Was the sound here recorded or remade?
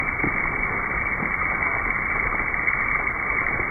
recorded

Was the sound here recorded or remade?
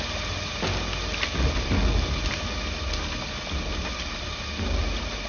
recorded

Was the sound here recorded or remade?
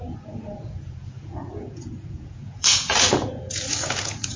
remade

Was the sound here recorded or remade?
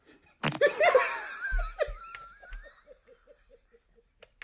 recorded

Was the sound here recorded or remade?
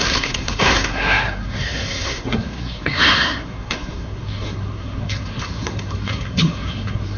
remade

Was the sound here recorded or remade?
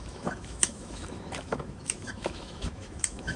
remade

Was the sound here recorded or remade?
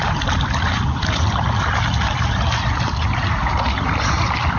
recorded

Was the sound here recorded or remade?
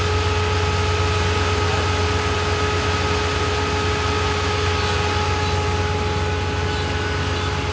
recorded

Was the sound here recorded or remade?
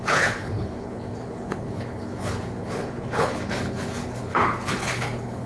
remade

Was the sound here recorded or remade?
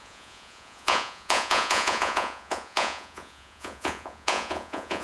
remade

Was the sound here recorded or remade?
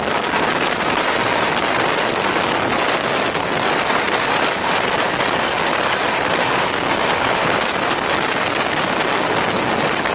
recorded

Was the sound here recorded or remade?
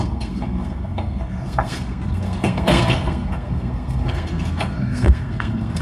remade